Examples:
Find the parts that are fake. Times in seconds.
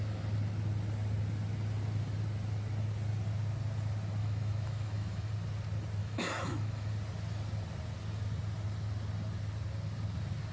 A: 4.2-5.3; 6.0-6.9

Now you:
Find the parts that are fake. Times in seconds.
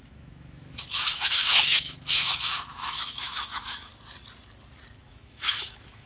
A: 0.0-3.9; 5.1-6.1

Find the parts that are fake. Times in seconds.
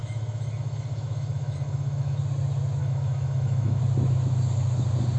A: 0.0-2.2; 2.8-3.8